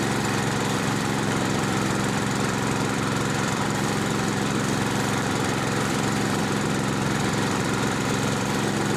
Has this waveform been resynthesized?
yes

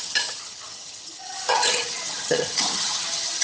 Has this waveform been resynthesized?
yes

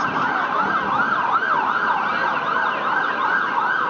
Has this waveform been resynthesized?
no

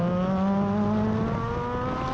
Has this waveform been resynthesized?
no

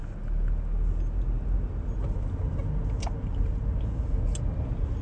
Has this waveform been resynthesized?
no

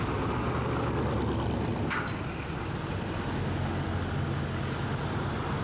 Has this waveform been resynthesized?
no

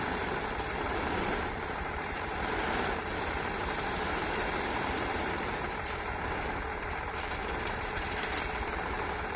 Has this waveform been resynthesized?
yes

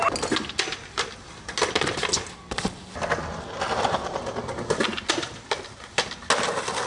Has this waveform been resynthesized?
no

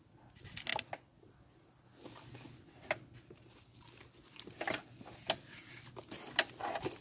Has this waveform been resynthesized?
no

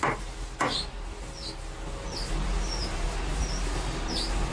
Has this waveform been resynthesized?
no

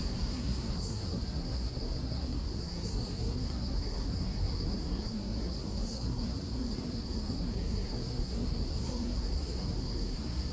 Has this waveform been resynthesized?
yes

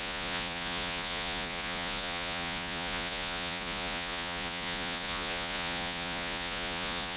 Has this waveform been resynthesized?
yes